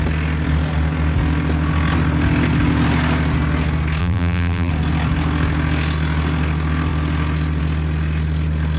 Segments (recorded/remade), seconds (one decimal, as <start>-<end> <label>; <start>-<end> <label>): 0.0-4.0 recorded; 4.0-4.7 remade; 4.7-8.8 recorded